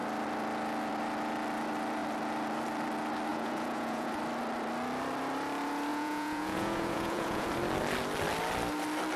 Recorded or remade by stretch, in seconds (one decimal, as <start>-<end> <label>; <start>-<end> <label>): 0.0-3.3 recorded; 3.3-4.1 remade; 4.1-5.9 recorded; 5.9-7.5 remade; 7.5-9.2 recorded